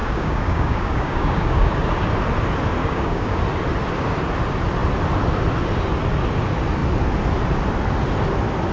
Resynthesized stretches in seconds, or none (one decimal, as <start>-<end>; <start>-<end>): 0.0-1.7; 2.8-3.4

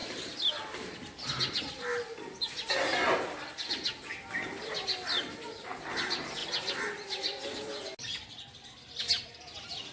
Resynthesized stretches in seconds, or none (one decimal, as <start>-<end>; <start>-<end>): none

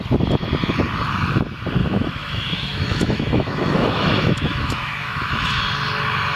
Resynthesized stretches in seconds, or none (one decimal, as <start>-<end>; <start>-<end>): 1.8-5.6

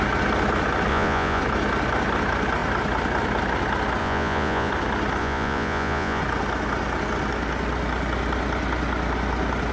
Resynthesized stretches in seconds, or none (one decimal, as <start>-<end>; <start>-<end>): 0.9-1.4; 4.0-4.7; 5.2-6.2

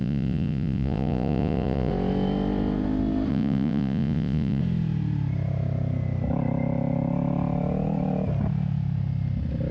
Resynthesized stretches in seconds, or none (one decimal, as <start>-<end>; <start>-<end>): 0.0-1.9; 3.3-4.6

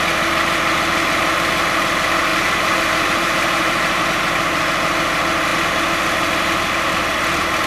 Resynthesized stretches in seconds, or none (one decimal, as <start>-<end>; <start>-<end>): 2.3-4.0

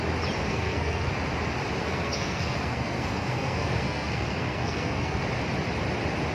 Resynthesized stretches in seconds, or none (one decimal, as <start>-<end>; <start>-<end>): 0.5-1.1; 1.8-5.2

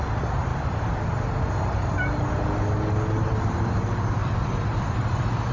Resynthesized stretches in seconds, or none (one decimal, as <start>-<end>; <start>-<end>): 0.0-0.5; 3.2-5.5